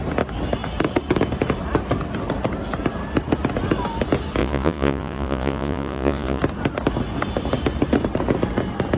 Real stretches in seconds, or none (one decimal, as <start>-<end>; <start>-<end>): 0.0-4.4; 6.4-9.0